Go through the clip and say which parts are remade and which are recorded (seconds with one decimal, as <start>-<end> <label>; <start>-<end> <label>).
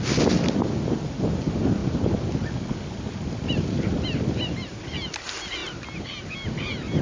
0.0-7.0 recorded